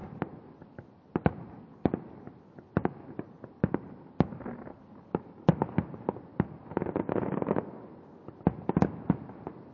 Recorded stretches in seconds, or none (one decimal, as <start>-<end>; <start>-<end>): 0.0-9.7